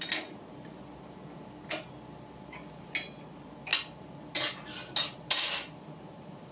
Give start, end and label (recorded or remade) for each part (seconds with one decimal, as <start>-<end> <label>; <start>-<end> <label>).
0.0-6.5 recorded